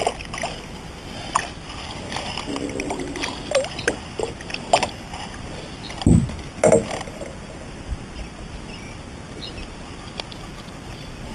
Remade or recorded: recorded